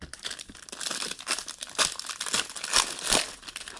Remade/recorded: recorded